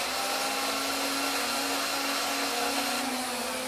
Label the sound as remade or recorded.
recorded